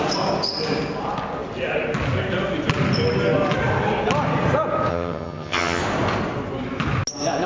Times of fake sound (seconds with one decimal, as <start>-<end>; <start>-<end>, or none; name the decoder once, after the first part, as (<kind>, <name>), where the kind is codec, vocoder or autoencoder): 4.9-5.8 (vocoder, HiFi-GAN)